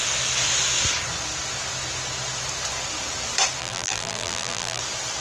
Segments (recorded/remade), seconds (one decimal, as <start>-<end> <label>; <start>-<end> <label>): 0.0-3.6 recorded; 3.6-4.8 remade; 4.8-5.2 recorded